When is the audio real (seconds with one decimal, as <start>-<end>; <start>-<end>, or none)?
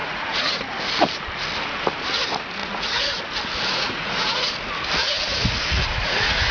0.6-2.6; 3.2-3.7; 4.5-5.0